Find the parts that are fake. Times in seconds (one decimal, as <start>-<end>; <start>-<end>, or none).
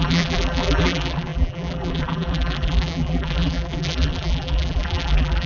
0.0-5.5